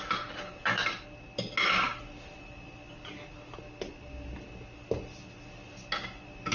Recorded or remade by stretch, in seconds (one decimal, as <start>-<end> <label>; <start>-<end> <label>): 0.0-6.5 recorded